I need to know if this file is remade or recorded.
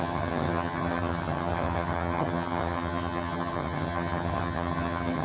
remade